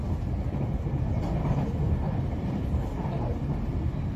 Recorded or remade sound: recorded